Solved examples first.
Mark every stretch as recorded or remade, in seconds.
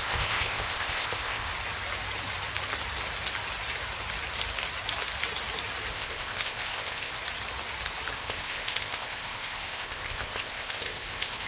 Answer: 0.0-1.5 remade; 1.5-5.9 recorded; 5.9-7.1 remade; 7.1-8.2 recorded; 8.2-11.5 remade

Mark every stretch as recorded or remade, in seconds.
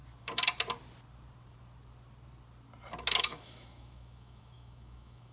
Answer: 0.0-3.2 recorded; 3.2-5.3 remade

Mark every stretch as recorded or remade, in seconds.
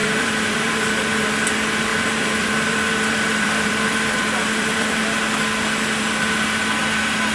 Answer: 0.0-0.9 remade; 0.9-1.9 recorded; 1.9-5.0 remade; 5.0-7.3 recorded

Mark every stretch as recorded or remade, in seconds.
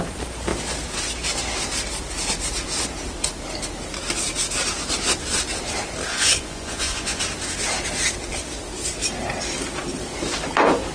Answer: 0.0-6.1 recorded; 6.1-7.2 remade; 7.2-10.9 recorded